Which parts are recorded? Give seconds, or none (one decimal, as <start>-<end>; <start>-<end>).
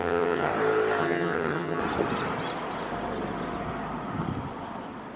0.5-1.0; 1.8-5.2